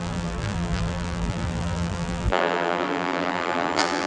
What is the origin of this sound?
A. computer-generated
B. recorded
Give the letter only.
A